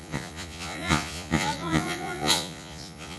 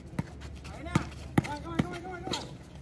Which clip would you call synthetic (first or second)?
first